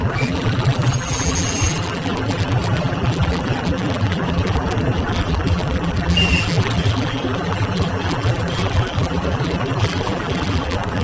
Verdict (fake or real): fake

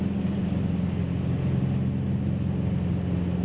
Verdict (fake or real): real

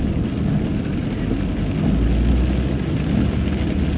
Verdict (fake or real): real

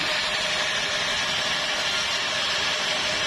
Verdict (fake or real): real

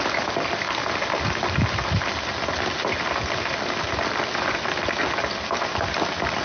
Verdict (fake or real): real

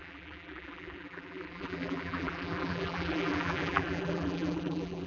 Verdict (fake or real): fake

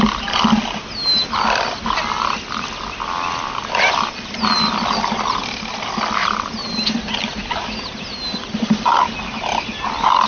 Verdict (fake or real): real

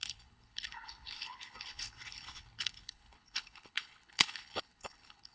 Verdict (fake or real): fake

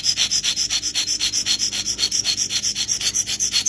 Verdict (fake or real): real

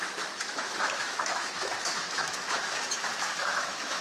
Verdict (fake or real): fake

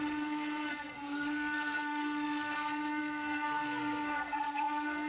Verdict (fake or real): fake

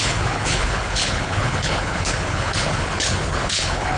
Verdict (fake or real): fake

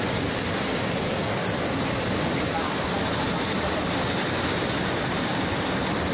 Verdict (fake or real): real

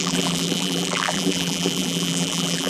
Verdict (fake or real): fake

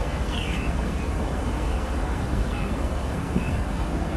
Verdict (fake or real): fake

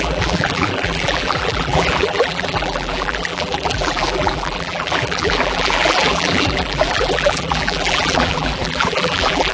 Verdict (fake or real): fake